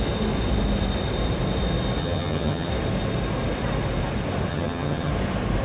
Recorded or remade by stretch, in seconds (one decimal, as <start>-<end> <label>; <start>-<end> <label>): 0.0-2.0 recorded; 2.0-2.7 remade; 2.7-4.5 recorded; 4.5-5.1 remade; 5.1-5.6 recorded